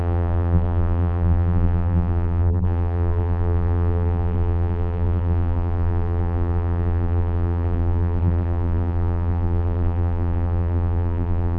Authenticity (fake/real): fake